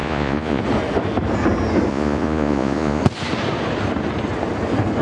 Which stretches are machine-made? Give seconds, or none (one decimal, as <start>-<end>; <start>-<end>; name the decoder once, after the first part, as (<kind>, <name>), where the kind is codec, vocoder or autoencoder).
0.0-0.6 (vocoder, Vocos); 1.9-3.0